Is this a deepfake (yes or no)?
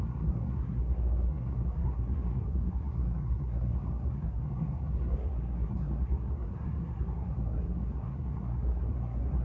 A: yes